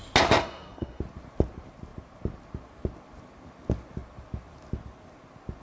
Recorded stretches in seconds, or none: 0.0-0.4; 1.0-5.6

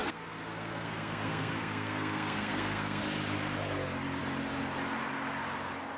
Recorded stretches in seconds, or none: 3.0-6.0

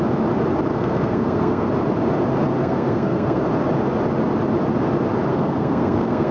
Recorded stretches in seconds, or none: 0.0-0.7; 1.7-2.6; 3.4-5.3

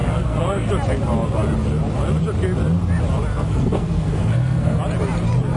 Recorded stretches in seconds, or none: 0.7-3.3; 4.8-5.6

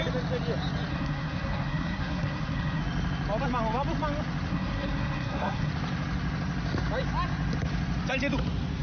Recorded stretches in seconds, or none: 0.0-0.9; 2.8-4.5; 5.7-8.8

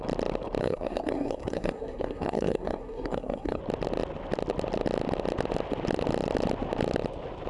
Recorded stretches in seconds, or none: 0.0-0.6; 3.6-7.5